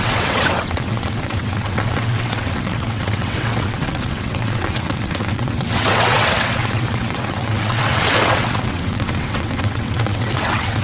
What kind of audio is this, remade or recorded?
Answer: remade